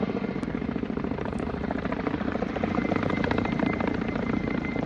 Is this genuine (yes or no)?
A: no